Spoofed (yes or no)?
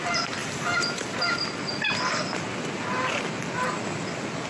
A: no